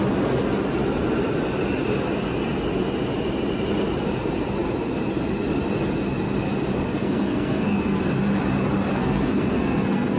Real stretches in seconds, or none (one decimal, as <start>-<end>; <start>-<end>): 0.0-6.9; 8.0-8.9